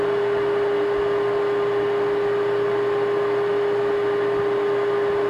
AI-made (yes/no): no